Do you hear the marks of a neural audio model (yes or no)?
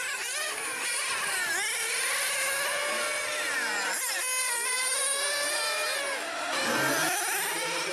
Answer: no